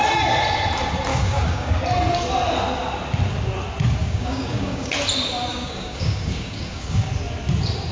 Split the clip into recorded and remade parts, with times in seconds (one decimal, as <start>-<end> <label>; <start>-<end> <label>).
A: 0.0-1.1 recorded; 1.1-1.8 remade; 1.8-4.0 recorded; 4.0-4.9 remade; 4.9-5.5 recorded; 5.5-7.1 remade; 7.1-7.9 recorded